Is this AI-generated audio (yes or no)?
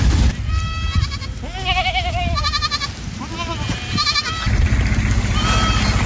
no